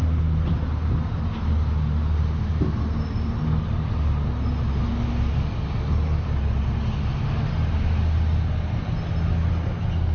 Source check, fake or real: real